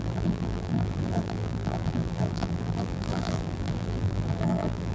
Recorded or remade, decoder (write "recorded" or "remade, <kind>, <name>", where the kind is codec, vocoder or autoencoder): remade, vocoder, BigVGAN v2